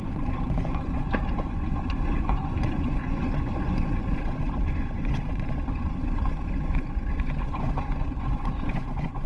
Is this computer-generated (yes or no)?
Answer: yes